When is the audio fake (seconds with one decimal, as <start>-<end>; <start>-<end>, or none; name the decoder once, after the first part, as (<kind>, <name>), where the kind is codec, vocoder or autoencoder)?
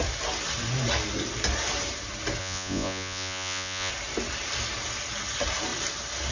2.4-3.9 (vocoder, Vocos)